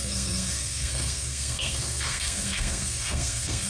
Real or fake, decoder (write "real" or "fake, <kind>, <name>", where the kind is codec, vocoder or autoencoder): fake, codec, SNAC